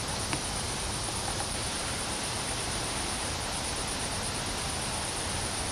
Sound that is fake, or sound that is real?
real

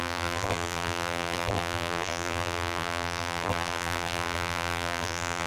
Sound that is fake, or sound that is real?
fake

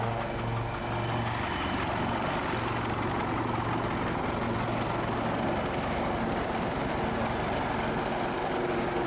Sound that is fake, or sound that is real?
real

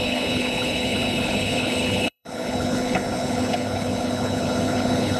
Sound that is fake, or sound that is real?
fake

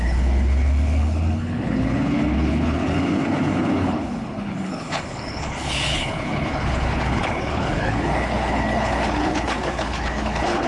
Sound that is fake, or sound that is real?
fake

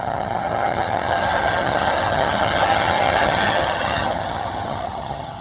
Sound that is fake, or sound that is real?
fake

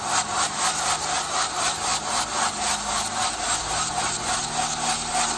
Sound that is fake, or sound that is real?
real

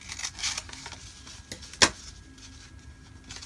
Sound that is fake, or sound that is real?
real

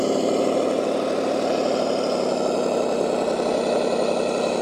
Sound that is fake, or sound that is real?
real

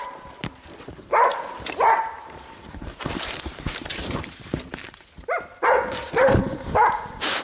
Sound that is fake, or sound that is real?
fake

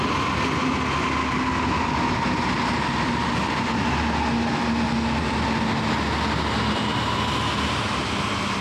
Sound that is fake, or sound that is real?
real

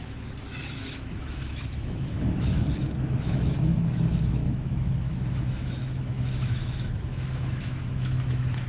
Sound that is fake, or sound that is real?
fake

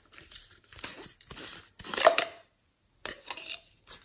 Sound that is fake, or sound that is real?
real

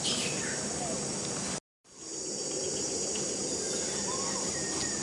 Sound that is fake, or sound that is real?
real